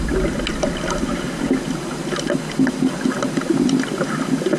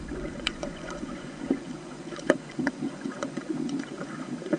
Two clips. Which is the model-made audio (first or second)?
second